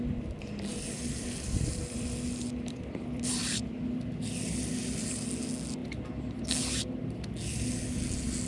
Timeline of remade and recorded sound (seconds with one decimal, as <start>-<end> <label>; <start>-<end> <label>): 0.0-0.7 recorded; 0.7-3.4 remade; 3.4-8.5 recorded